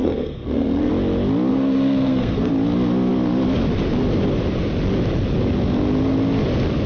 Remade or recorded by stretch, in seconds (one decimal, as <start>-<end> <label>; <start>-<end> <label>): 0.0-0.9 remade; 0.9-1.5 recorded; 1.5-2.5 remade; 2.5-6.9 recorded